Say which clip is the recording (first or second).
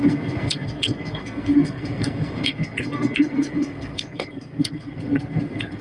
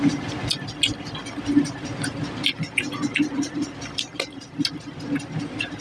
second